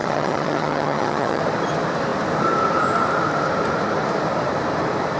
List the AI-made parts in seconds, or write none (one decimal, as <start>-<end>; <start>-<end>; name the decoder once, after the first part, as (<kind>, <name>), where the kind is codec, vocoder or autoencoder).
0.0-1.4 (vocoder, HiFi-GAN)

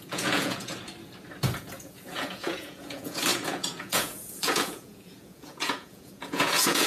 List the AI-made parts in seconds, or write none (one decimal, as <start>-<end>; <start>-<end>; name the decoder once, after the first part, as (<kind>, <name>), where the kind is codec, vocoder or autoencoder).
0.0-0.7 (vocoder, Vocos); 1.6-6.9